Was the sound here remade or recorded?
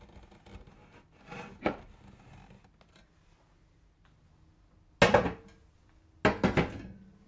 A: recorded